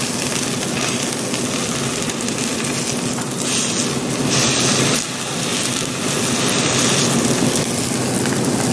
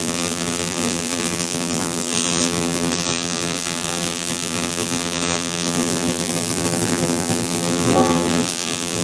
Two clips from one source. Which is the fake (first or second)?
second